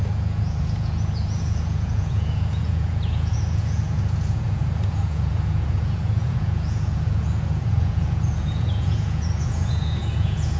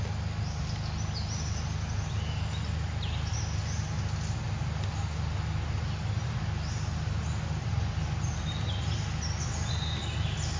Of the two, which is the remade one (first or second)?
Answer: first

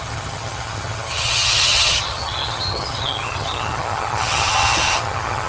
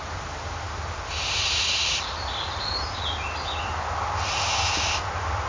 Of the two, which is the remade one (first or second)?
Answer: first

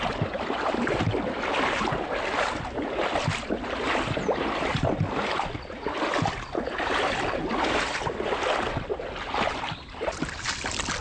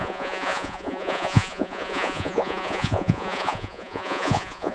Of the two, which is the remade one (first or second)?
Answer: second